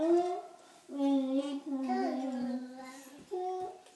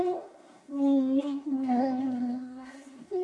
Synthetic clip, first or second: second